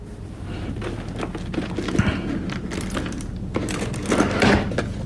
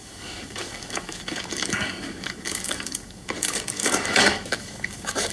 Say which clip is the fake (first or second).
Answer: second